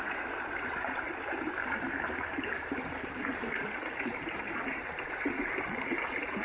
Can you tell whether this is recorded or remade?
remade